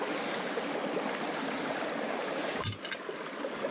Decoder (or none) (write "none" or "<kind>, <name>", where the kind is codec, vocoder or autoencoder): none